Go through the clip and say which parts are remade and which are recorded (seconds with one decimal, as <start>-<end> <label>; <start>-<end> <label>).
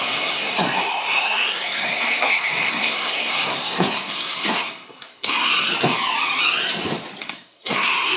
0.0-5.7 remade; 5.7-7.2 recorded; 7.2-8.2 remade